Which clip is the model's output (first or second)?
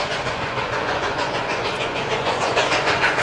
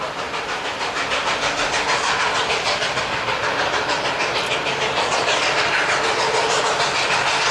first